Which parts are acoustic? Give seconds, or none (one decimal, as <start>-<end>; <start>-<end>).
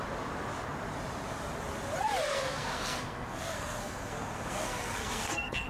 0.0-2.3